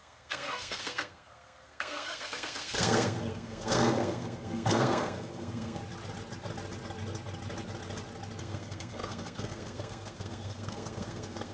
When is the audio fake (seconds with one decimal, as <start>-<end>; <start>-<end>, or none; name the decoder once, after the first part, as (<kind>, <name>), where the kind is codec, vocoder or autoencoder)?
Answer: 0.0-5.8 (codec, SNAC); 8.4-11.5